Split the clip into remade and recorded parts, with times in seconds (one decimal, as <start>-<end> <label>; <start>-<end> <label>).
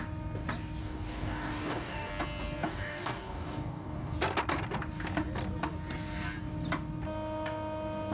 0.0-0.8 recorded; 0.8-2.1 remade; 2.1-2.7 recorded; 2.7-4.2 remade; 4.2-8.1 recorded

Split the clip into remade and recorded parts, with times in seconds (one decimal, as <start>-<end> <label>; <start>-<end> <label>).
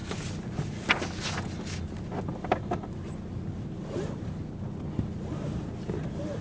0.0-6.4 recorded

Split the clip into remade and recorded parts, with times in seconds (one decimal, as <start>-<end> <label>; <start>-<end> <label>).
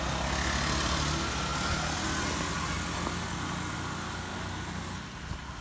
0.0-5.6 recorded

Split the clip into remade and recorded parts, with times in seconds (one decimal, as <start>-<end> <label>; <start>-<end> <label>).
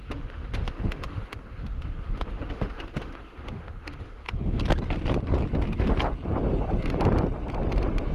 0.0-4.6 remade; 4.6-8.1 recorded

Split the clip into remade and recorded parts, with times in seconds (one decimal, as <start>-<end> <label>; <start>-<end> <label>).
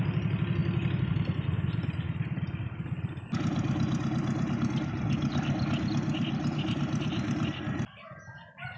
0.0-8.8 recorded